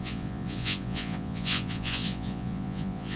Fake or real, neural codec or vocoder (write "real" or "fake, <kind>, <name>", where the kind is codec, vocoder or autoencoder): fake, vocoder, Vocos